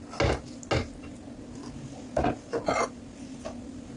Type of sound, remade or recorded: recorded